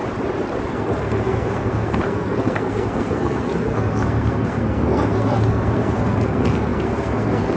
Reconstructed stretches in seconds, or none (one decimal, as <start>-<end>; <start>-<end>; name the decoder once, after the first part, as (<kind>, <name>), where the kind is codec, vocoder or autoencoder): 0.7-7.6 (codec, SNAC)